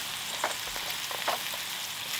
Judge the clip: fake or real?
real